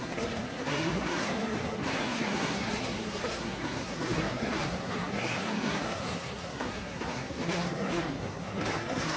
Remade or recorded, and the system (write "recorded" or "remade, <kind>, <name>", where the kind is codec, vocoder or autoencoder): remade, codec, SNAC